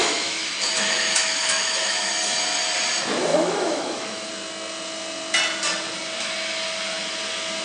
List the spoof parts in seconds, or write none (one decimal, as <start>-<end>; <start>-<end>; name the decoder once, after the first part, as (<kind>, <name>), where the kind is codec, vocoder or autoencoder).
0.0-2.1 (autoencoder, DAC-VAE); 3.3-4.3